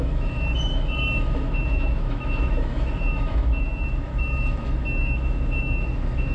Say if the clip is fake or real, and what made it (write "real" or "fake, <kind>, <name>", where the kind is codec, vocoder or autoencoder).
fake, autoencoder, DAC-VAE